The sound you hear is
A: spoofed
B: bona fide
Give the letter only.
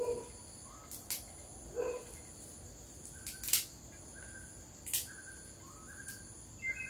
B